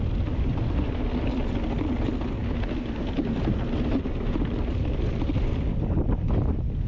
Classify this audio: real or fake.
real